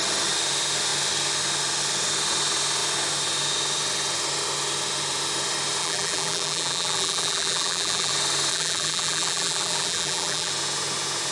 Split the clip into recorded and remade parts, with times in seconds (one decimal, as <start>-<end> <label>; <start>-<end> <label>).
0.0-5.8 recorded; 5.8-8.1 remade; 8.1-8.5 recorded; 8.5-10.5 remade; 10.5-11.3 recorded